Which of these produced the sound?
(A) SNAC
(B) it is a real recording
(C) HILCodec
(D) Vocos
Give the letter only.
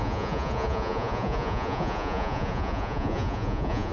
D